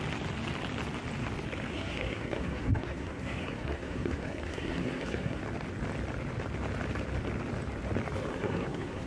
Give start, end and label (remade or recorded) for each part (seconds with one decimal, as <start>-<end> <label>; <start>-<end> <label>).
0.0-1.7 recorded; 1.7-5.4 remade; 5.4-8.3 recorded; 8.3-9.1 remade